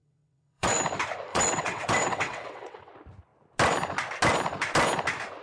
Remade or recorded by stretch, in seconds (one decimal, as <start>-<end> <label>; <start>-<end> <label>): 0.0-0.8 remade; 0.8-1.3 recorded; 1.3-2.9 remade; 2.9-5.4 recorded